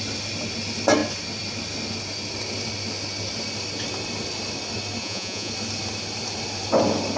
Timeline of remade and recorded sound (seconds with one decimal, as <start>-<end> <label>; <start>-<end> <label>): 0.0-5.0 recorded; 5.0-5.5 remade; 5.5-7.2 recorded